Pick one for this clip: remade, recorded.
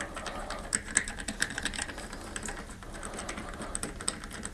recorded